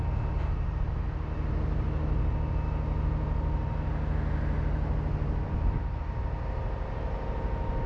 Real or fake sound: real